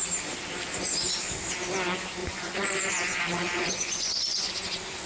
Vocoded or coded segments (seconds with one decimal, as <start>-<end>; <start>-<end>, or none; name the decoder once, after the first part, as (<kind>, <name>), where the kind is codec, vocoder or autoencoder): 2.2-4.5 (vocoder, Vocos)